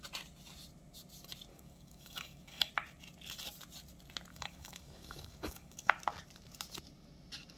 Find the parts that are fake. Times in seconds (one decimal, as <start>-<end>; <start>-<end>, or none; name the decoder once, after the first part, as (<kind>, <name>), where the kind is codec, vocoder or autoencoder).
1.5-2.7 (codec, DAC); 4.3-5.9